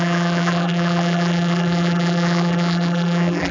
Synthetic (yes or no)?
yes